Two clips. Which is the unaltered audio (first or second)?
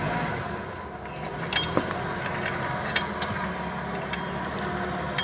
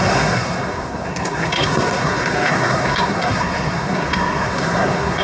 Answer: first